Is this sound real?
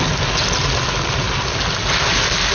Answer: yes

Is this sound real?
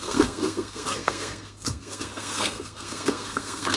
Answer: no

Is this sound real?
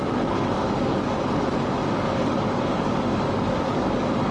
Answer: no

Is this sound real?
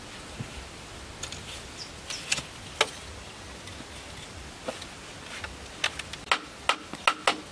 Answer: yes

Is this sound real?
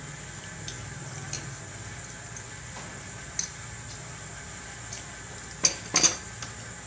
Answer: yes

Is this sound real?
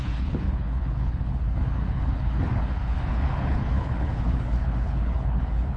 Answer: no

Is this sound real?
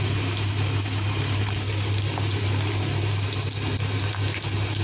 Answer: yes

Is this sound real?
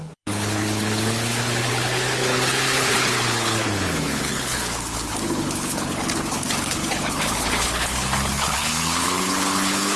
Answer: no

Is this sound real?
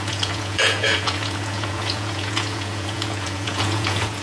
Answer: no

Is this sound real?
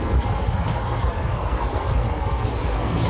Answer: no